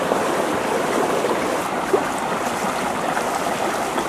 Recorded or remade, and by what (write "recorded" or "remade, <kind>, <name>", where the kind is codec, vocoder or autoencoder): recorded